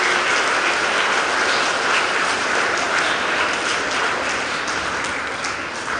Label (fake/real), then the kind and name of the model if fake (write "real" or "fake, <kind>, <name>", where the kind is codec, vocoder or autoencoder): real